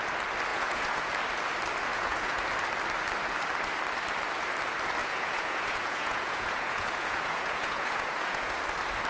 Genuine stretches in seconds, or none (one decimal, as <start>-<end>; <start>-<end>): 0.0-0.5; 1.1-1.9; 2.4-5.0; 8.5-9.1